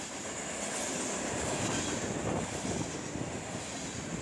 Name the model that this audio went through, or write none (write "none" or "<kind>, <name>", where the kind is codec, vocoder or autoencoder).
none